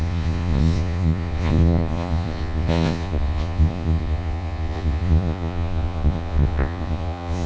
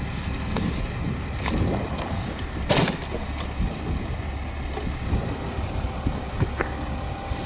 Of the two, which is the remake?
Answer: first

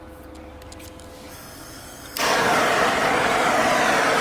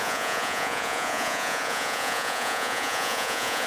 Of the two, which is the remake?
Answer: second